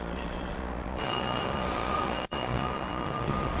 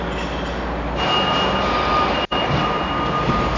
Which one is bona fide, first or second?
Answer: second